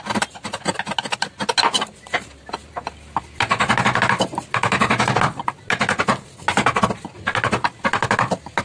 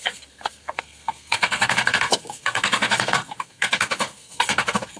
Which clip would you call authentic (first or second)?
first